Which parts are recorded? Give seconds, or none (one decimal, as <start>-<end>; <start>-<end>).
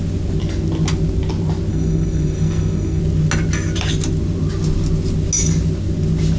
0.0-1.7; 3.0-6.4